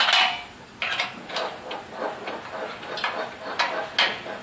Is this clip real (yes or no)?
yes